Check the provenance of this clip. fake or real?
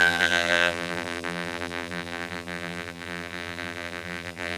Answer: fake